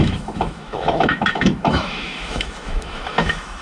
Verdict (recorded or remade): remade